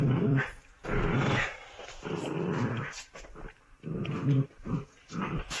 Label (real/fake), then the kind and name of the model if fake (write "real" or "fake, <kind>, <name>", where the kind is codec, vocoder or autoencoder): fake, vocoder, BigVGAN v2